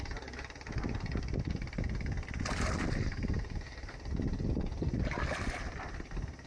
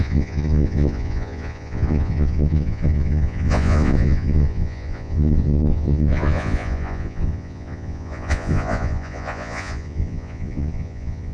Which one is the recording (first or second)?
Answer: first